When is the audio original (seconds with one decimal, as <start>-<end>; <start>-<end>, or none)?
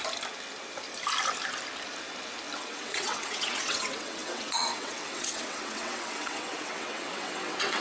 0.0-2.6